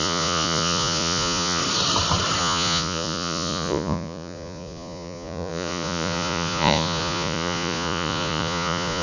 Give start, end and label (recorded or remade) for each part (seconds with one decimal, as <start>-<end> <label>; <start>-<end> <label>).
0.0-1.6 remade; 1.6-2.4 recorded; 2.4-9.0 remade